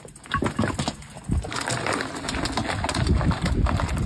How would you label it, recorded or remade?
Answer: recorded